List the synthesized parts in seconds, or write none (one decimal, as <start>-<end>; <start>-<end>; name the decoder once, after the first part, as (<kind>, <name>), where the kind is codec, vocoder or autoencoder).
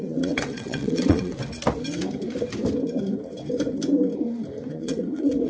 0.0-1.4 (vocoder, WaveNeXt); 4.7-5.5